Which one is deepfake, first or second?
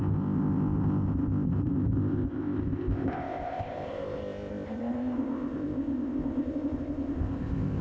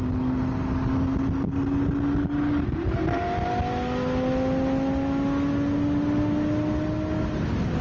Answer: first